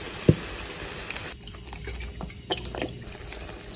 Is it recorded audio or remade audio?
recorded